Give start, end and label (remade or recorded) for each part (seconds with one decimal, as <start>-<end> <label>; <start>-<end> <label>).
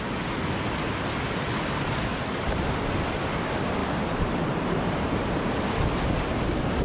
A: 0.0-3.8 recorded; 3.8-5.8 remade; 5.8-6.8 recorded